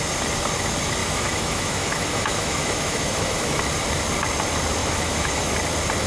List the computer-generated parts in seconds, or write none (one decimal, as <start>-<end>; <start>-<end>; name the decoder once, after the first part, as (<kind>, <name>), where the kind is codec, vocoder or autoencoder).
1.0-3.6 (autoencoder, DAC-VAE); 4.8-5.5